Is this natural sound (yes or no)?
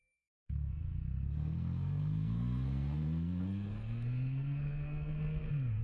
no